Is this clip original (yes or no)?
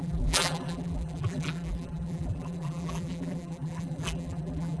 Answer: no